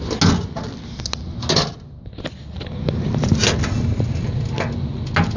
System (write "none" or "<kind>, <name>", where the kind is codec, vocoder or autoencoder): none